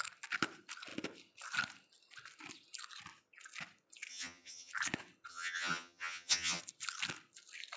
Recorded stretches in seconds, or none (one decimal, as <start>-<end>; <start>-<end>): 0.0-4.1; 4.7-5.3; 6.6-7.8